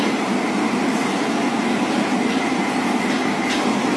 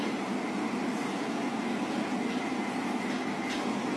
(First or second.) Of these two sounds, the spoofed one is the first